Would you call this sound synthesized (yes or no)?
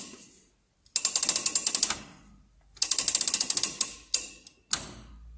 no